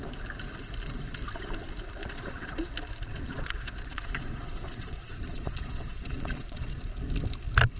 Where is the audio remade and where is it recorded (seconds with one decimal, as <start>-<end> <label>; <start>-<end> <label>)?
0.0-2.0 recorded; 2.0-2.7 remade; 2.7-3.1 recorded; 3.1-6.8 remade; 6.8-7.8 recorded